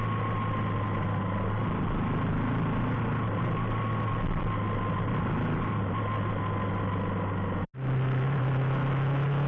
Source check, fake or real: real